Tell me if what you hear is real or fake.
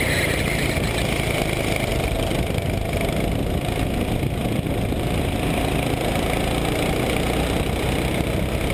real